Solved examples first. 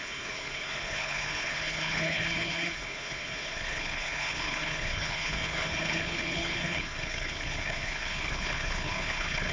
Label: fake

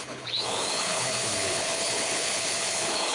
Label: fake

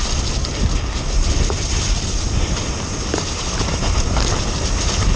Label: real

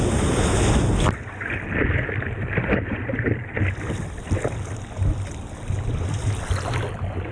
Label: real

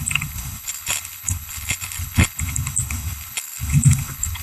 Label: fake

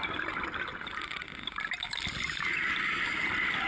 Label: real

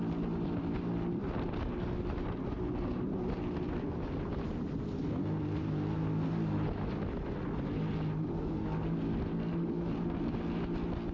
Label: real